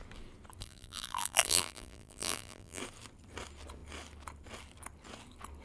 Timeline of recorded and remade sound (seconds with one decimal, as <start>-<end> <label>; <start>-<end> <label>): 0.0-0.6 recorded; 0.6-2.8 remade; 2.8-5.6 recorded